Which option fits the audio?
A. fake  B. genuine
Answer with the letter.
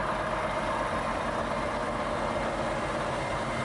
B